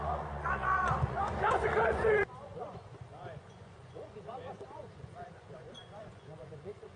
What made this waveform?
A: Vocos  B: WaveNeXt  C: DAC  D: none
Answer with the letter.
A